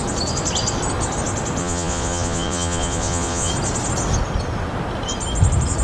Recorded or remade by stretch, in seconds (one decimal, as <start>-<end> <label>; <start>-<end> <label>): 0.0-1.6 recorded; 1.6-3.5 remade; 3.5-5.8 recorded